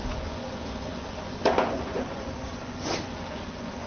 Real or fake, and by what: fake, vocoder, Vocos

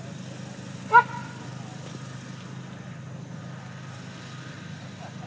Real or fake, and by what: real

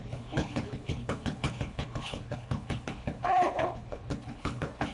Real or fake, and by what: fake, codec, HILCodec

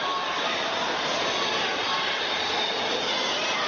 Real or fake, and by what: real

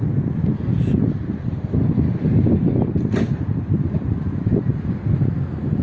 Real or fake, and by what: real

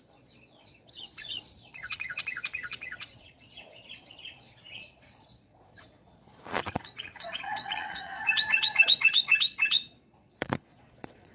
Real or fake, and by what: fake, vocoder, Vocos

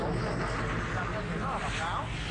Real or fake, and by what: real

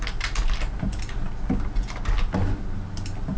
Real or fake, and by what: real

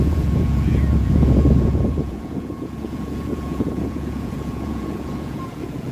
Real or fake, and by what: fake, vocoder, Vocos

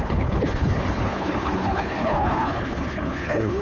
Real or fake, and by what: fake, codec, HILCodec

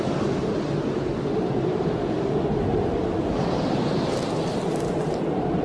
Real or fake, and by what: real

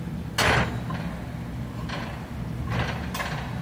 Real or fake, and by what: real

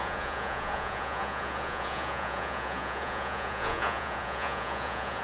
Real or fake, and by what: fake, vocoder, Vocos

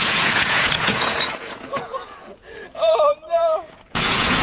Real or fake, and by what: fake, vocoder, Vocos